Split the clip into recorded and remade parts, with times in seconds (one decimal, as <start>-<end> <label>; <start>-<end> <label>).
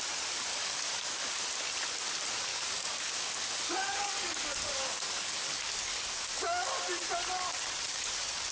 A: 0.0-0.5 recorded; 0.5-1.4 remade; 1.4-2.5 recorded; 2.5-6.7 remade; 6.7-7.9 recorded; 7.9-8.5 remade